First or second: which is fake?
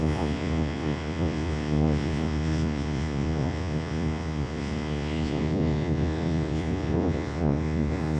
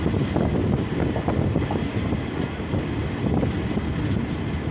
first